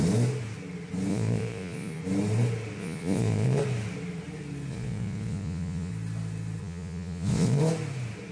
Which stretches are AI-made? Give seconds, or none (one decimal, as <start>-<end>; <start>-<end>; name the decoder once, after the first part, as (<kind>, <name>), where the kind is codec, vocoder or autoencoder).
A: 1.1-2.0 (vocoder, Vocos); 2.8-3.6; 4.7-5.9; 6.6-7.6